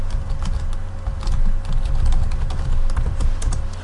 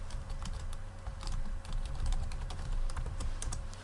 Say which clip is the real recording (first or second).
first